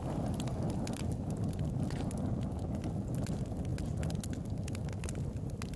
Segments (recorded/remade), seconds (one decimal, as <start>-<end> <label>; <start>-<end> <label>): 0.0-5.8 recorded